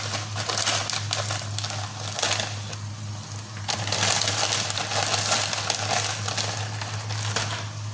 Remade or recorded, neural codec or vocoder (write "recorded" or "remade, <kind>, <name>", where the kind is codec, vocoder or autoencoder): recorded